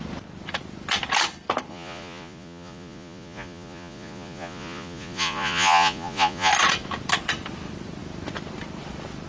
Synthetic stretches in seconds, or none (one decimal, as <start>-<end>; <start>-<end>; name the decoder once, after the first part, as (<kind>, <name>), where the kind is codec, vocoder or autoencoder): 1.7-6.5 (vocoder, Vocos)